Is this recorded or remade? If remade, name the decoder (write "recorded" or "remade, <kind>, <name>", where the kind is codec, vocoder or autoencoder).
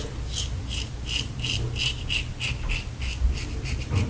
recorded